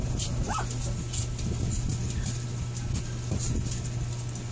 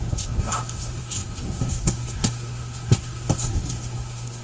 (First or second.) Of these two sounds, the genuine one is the first